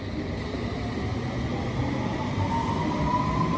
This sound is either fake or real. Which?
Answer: real